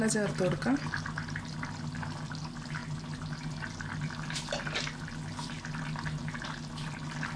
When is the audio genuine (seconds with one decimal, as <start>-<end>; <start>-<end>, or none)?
0.0-7.4

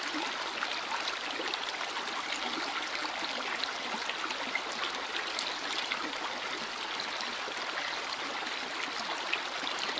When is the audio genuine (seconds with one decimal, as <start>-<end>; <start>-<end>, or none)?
0.0-10.0

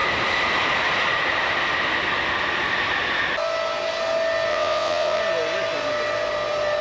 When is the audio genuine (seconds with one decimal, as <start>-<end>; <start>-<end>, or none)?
0.0-4.5; 5.2-6.8

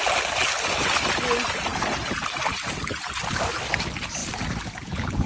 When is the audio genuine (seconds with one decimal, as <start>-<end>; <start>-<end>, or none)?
0.0-5.3

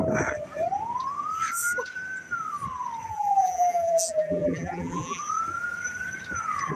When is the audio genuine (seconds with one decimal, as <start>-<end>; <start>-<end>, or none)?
0.0-3.1; 5.2-6.8

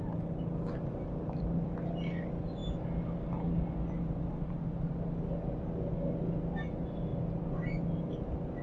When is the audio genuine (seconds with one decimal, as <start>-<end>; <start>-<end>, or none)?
0.0-8.6